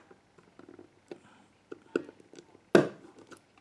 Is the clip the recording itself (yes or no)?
yes